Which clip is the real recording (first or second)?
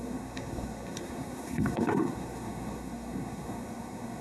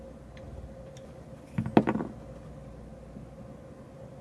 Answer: second